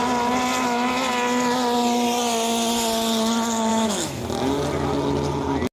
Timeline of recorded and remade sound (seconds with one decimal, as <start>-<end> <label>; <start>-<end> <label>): 0.0-3.7 recorded; 3.7-4.2 remade; 4.2-5.7 recorded